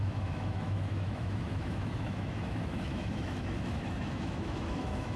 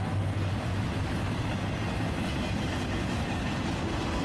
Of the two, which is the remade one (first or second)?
first